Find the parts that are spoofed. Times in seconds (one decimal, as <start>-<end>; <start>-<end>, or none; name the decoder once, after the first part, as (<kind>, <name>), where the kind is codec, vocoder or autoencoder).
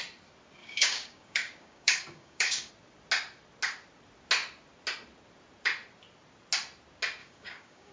0.6-2.7 (codec, DAC); 7.2-7.9